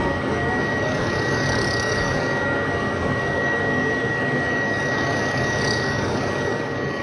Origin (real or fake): fake